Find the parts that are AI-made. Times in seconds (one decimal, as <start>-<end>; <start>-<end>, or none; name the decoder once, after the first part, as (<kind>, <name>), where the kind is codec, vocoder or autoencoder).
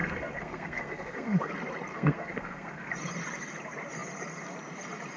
0.0-1.5 (codec, SNAC); 1.9-2.9